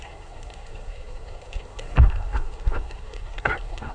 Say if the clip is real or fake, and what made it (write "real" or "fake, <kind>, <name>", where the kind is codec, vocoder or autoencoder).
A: fake, codec, SNAC